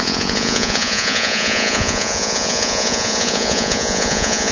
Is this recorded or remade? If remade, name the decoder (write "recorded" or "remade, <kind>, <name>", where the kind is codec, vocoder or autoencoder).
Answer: remade, vocoder, Vocos